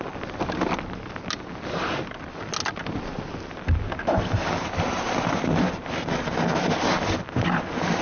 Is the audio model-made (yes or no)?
no